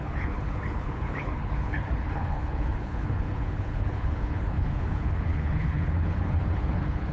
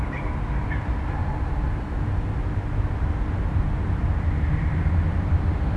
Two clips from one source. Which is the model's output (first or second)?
first